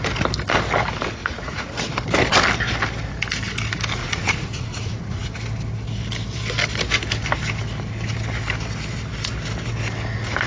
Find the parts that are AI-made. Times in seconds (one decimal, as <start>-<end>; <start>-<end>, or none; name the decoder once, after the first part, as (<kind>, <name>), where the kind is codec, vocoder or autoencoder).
1.2-1.7 (vocoder, Vocos); 4.0-5.2